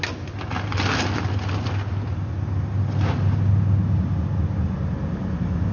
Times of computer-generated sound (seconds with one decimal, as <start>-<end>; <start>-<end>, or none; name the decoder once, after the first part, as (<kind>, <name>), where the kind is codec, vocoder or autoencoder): none